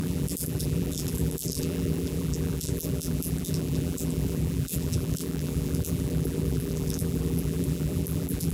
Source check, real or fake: fake